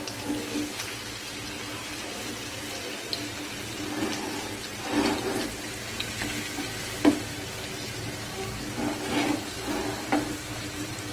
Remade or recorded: recorded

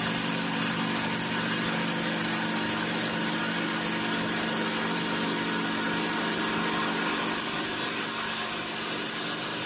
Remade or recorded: recorded